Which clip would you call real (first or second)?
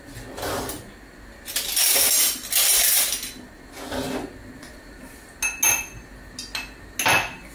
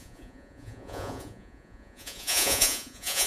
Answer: first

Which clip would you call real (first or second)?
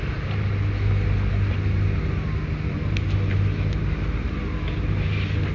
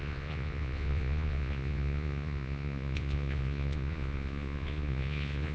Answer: first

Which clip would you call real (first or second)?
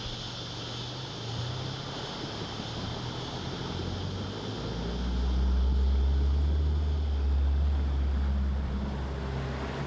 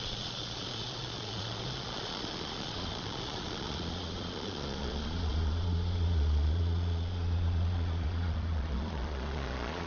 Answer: first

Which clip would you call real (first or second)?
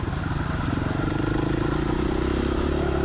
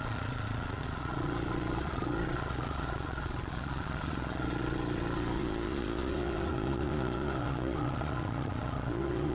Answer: first